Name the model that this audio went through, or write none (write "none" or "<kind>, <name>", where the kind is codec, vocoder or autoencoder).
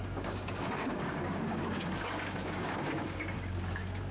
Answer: codec, DAC